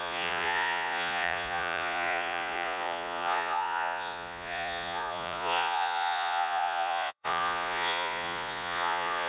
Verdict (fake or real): fake